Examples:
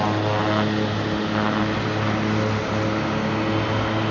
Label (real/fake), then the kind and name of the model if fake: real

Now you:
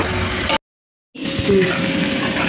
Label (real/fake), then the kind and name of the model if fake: real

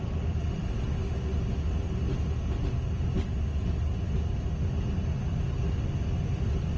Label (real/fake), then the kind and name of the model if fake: real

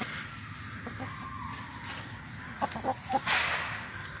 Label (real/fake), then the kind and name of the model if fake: real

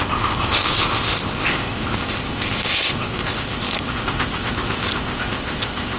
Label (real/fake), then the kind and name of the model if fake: fake, codec, ZipCodec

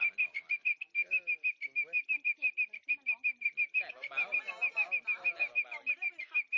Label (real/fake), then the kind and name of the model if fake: real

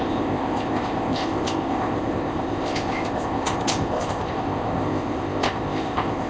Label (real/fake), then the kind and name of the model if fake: fake, codec, ZipCodec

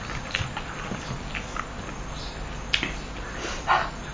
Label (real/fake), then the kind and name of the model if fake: real